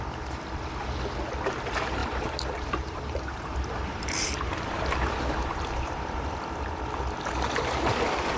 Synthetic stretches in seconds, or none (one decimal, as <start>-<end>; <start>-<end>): 2.0-6.6